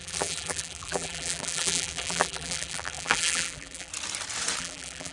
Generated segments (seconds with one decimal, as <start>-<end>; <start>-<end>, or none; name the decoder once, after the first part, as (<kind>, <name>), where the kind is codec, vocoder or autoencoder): 0.0-3.9 (vocoder, BigVGAN v2); 4.6-5.1